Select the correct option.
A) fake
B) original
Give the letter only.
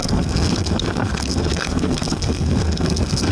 A